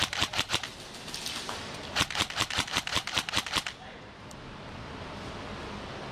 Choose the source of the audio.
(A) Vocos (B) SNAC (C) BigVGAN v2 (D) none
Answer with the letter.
D